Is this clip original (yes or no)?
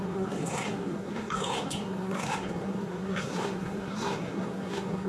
no